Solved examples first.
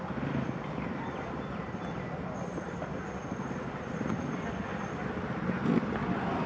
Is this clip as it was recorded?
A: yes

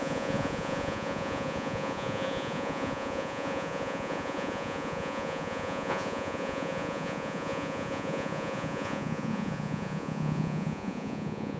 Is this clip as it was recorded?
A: no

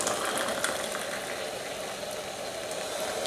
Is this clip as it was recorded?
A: yes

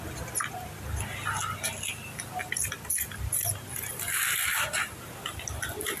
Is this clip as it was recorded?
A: yes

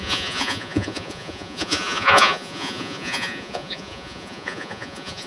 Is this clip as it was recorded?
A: no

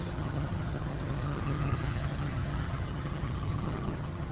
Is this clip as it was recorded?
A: no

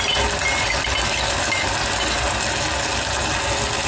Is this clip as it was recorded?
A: yes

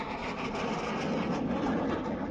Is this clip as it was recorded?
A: yes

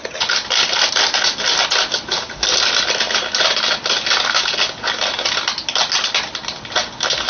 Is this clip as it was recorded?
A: yes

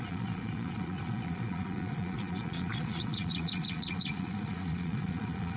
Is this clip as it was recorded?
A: no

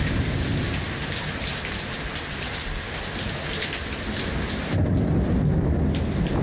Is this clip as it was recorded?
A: yes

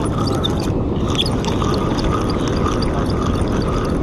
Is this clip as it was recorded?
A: yes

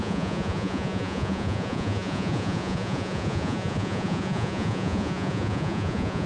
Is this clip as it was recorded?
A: no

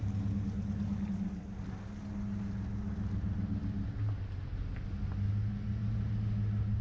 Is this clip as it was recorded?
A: yes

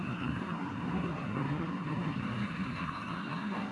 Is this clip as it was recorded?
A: no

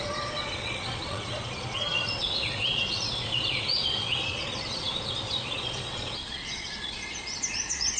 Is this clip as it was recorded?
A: no